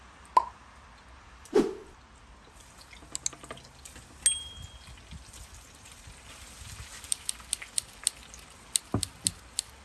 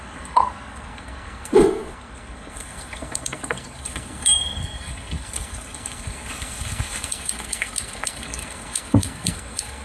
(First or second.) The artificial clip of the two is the second